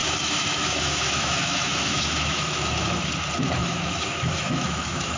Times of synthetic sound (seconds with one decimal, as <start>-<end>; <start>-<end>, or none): 0.0-3.1; 3.6-5.2